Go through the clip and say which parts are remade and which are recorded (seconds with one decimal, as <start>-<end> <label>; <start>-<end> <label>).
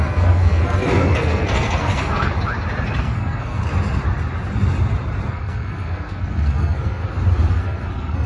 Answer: 0.0-2.3 remade; 2.3-3.0 recorded; 3.0-3.6 remade; 3.6-5.3 recorded; 5.3-7.0 remade; 7.0-7.5 recorded; 7.5-8.3 remade